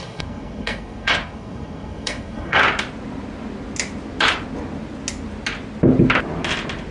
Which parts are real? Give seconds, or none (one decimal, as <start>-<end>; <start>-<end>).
2.6-6.9